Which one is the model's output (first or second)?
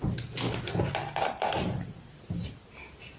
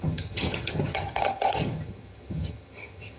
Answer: second